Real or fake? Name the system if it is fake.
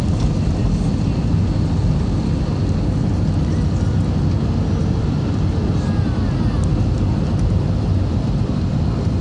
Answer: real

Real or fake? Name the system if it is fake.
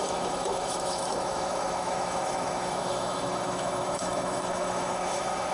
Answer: fake, autoencoder, DAC-VAE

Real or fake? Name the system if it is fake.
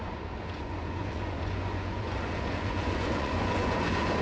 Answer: fake, vocoder, Vocos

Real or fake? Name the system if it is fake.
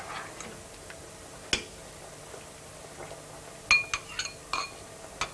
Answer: real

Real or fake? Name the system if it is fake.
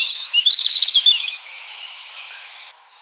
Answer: fake, autoencoder, DAC-VAE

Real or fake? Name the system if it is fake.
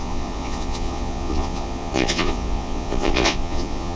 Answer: fake, vocoder, Vocos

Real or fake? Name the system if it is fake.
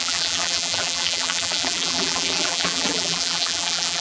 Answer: fake, vocoder, BigVGAN v2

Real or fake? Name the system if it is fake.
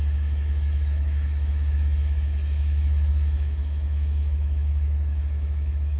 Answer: fake, autoencoder, DAC-VAE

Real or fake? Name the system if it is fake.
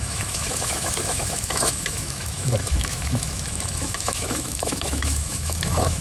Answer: fake, autoencoder, DAC-VAE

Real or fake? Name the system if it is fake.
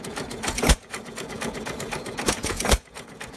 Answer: fake, vocoder, Vocos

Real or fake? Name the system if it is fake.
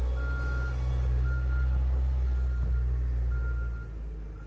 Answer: real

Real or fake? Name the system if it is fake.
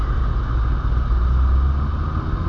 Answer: real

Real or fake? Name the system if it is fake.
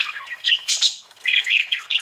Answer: fake, codec, SNAC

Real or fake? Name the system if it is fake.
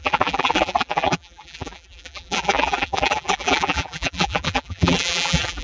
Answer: fake, vocoder, BigVGAN v2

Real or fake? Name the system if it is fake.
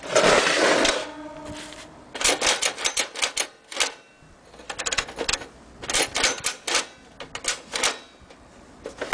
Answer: real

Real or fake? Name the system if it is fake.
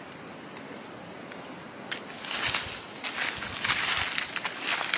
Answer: real